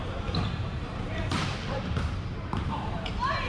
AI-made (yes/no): yes